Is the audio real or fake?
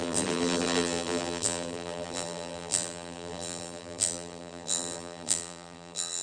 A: fake